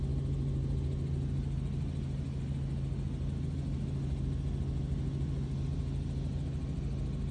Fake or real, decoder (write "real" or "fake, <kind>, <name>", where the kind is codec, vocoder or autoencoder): real